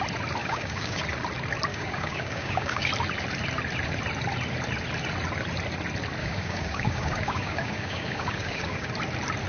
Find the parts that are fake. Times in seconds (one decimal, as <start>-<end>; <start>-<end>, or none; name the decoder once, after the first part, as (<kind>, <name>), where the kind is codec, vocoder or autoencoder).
0.4-1.0 (codec, DAC); 1.7-2.9; 6.2-8.9